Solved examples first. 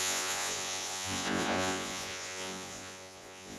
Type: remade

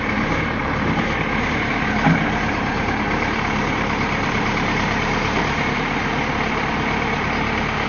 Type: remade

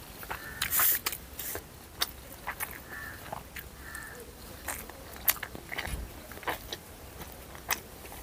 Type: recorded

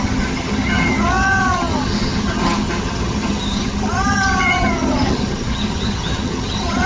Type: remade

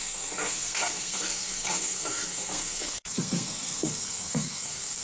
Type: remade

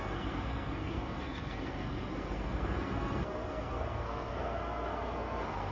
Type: remade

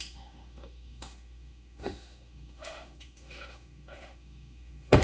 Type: remade